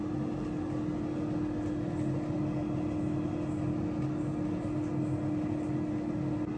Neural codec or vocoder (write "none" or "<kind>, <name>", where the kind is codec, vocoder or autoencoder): none